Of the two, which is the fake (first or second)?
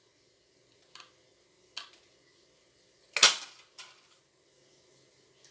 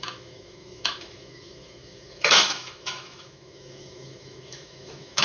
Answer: second